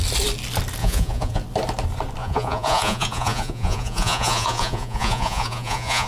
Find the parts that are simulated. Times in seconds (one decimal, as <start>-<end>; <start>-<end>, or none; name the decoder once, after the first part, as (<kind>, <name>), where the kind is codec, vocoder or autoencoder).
0.8-1.4 (vocoder, Vocos); 2.2-6.1